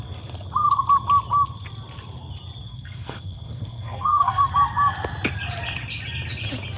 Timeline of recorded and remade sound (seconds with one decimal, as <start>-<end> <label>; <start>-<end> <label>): 0.0-2.7 recorded; 2.7-4.5 remade; 4.5-6.8 recorded